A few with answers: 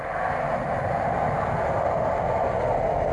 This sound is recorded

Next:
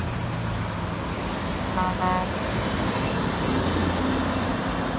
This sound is recorded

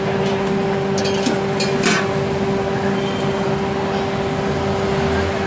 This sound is recorded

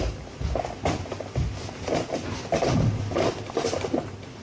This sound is recorded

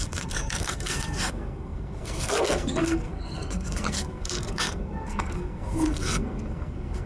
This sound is remade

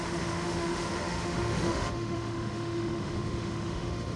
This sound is remade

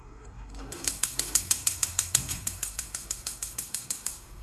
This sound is remade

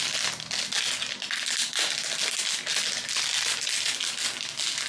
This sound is recorded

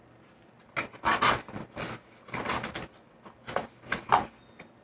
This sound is recorded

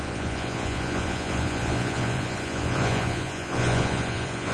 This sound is remade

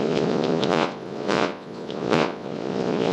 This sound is remade